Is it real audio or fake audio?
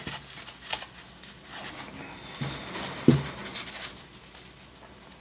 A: real